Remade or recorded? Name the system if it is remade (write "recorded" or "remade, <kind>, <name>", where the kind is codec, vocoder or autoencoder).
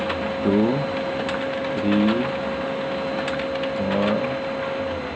recorded